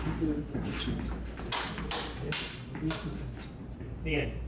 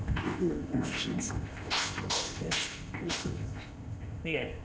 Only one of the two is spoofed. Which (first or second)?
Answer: second